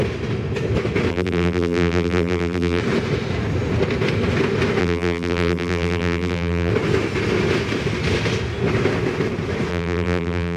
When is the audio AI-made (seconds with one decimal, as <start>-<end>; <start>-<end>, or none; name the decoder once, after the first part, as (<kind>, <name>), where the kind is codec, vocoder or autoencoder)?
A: 1.1-2.8 (vocoder, BigVGAN v2); 4.8-6.7; 9.7-10.6

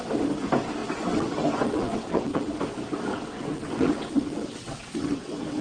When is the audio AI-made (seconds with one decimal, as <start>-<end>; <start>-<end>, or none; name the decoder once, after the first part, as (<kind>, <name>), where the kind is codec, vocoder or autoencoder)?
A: 0.8-2.5 (vocoder, WaveNeXt); 3.1-5.6

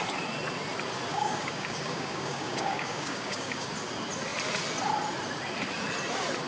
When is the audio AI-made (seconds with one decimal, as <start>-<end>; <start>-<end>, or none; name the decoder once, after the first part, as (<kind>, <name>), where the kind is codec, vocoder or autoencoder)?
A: 1.1-3.7 (codec, DAC)

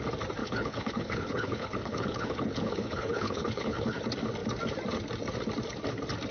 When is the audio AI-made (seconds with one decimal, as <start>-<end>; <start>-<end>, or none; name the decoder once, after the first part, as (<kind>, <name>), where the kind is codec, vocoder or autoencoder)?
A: 0.4-4.0 (codec, HILCodec)

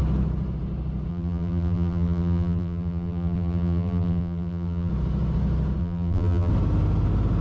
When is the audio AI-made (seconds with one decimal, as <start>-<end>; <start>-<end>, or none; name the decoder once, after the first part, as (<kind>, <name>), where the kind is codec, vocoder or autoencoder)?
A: 1.1-4.9 (vocoder, BigVGAN v2); 5.8-6.5

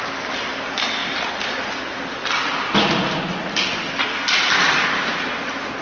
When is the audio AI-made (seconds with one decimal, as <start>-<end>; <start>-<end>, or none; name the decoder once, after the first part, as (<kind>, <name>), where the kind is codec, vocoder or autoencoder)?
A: 1.0-1.7 (vocoder, BigVGAN v2)

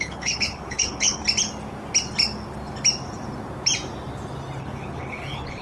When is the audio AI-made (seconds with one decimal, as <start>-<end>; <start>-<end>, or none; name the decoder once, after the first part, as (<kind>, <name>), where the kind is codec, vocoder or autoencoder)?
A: 0.0-1.2 (codec, HILCodec); 4.6-5.6

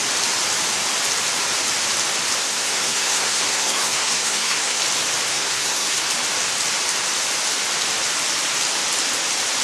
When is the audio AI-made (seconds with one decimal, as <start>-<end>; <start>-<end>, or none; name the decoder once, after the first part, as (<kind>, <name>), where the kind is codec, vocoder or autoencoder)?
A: 2.4-4.8 (codec, SNAC); 5.3-6.0